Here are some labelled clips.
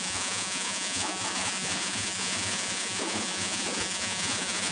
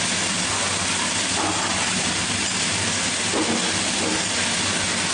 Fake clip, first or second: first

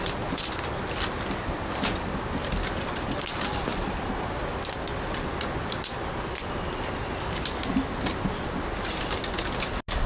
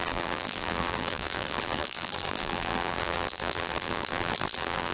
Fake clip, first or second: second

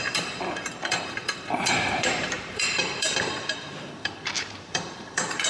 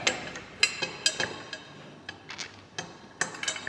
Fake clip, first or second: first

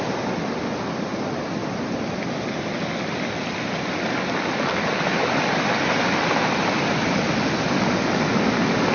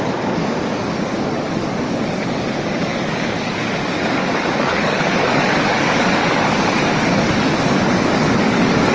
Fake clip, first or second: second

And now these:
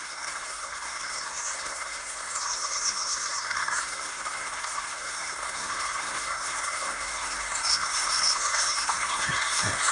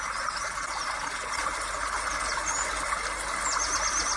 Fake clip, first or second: first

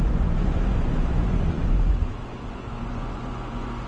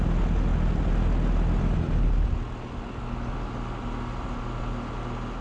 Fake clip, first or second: first